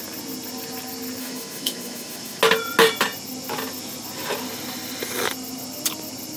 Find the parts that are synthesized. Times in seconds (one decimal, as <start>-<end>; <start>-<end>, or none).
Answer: 1.2-2.4